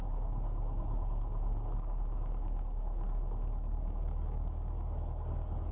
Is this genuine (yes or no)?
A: no